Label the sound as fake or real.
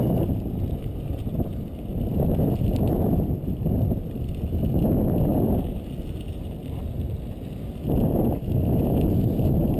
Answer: real